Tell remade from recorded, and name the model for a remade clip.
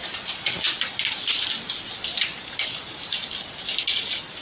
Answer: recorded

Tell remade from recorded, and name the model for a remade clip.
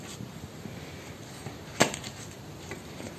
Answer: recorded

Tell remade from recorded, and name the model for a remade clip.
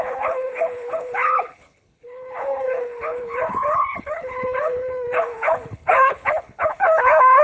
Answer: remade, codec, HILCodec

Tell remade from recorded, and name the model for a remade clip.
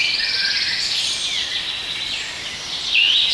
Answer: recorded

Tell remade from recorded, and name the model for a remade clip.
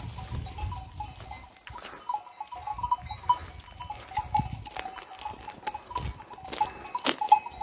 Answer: recorded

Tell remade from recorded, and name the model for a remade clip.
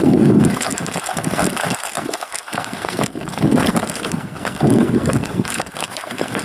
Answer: remade, codec, SNAC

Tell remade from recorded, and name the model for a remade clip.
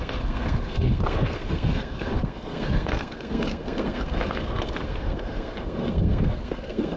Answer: remade, codec, SNAC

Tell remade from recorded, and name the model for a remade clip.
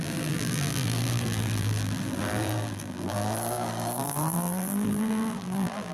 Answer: remade, vocoder, BigVGAN v2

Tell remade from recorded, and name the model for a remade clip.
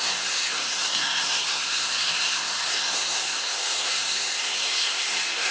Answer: remade, codec, SNAC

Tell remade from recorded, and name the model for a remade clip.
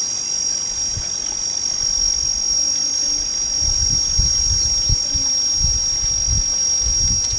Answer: recorded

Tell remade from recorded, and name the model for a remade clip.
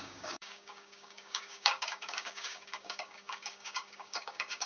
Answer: remade, codec, DAC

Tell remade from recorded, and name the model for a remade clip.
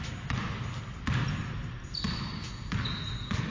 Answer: recorded